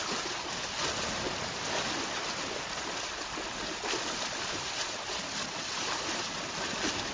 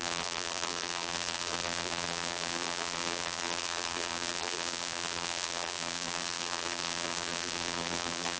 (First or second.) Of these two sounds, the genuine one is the first